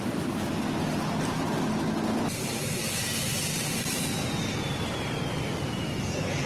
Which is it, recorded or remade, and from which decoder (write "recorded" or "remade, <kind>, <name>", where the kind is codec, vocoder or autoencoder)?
recorded